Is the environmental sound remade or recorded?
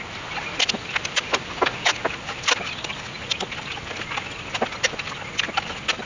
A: recorded